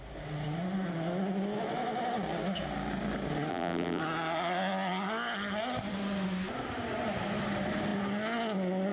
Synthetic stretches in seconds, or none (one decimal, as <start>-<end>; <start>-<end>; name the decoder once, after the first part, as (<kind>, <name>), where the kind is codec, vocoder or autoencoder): 3.5-4.0 (vocoder, BigVGAN v2)